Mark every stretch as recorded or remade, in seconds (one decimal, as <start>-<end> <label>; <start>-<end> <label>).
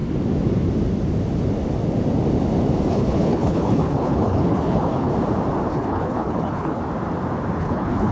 0.0-2.9 recorded; 2.9-5.1 remade; 5.1-5.7 recorded; 5.7-6.8 remade; 6.8-7.6 recorded; 7.6-8.1 remade